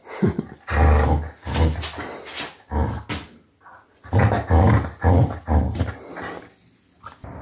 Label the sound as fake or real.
real